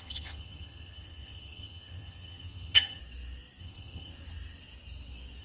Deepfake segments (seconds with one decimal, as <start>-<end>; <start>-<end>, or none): 0.0-3.0; 3.6-4.1